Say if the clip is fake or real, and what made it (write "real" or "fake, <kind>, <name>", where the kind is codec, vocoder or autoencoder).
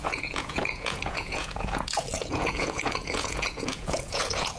fake, vocoder, Vocos